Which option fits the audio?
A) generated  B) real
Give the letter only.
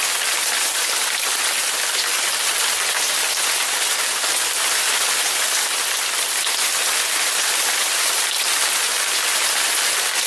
A